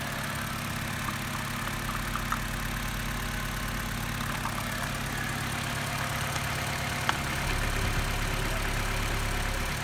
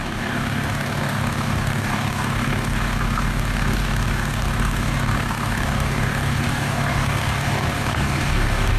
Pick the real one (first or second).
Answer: first